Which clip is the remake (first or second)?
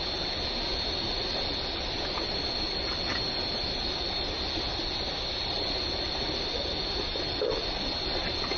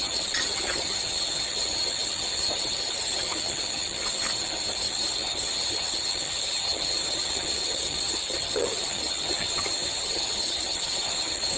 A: second